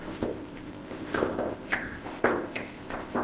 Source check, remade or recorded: remade